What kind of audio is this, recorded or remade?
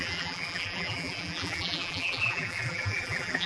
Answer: remade